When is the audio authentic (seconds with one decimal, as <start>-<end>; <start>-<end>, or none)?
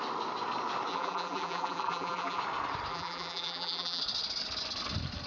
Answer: 0.0-0.9; 2.4-2.9; 4.0-5.3